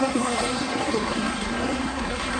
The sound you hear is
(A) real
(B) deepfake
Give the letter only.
B